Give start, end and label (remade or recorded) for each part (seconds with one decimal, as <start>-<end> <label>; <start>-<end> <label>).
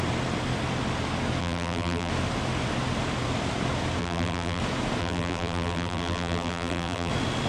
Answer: 0.0-1.4 recorded; 1.4-2.1 remade; 2.1-4.0 recorded; 4.0-4.6 remade; 4.6-5.0 recorded; 5.0-7.1 remade; 7.1-7.5 recorded